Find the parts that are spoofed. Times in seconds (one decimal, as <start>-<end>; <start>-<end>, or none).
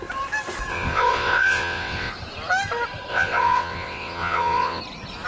0.7-2.1; 3.1-4.8